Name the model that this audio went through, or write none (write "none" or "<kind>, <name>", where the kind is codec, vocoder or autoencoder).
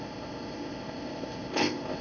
codec, ZipCodec